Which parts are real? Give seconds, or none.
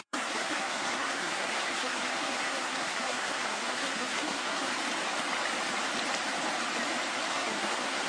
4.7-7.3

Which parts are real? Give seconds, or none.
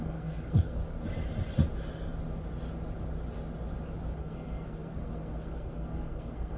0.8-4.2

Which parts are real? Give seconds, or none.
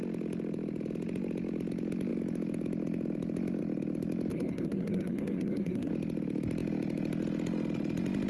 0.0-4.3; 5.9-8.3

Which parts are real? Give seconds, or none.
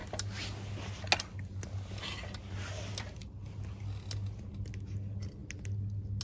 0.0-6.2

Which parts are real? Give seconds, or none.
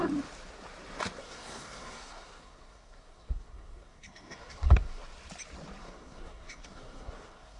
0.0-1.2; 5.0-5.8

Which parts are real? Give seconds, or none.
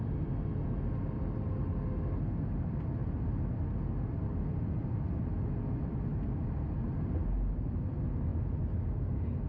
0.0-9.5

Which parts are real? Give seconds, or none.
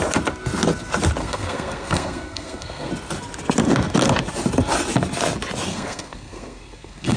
0.0-1.2; 2.9-5.7